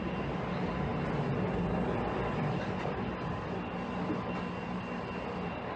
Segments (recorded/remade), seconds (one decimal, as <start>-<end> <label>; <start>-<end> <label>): 0.0-5.8 recorded